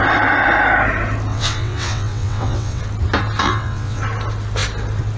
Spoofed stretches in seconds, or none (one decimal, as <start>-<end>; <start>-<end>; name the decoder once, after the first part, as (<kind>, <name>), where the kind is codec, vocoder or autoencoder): 1.3-2.8 (vocoder, WaveNeXt); 3.4-4.0